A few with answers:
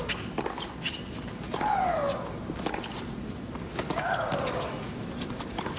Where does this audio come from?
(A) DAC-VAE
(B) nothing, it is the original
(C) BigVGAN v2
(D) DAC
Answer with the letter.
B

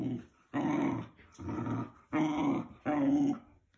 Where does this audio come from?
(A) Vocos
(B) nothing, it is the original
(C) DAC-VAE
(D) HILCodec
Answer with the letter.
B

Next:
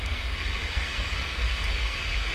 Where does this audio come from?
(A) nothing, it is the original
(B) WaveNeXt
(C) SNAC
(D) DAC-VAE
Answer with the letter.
C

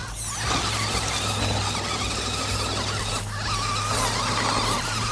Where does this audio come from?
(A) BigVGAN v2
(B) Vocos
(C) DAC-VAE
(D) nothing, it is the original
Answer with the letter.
D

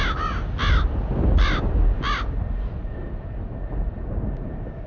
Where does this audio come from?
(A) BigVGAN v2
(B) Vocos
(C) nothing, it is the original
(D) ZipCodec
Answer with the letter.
C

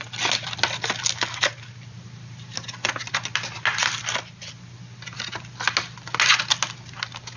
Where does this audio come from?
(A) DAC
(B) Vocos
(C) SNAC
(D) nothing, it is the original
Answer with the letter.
D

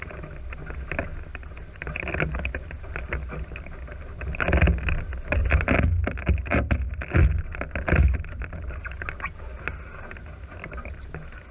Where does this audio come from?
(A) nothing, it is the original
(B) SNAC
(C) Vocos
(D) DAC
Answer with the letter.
A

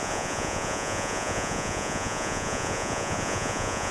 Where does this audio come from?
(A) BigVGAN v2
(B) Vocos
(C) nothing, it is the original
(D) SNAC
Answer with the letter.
B